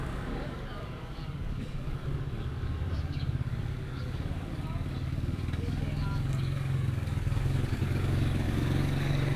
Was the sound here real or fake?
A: fake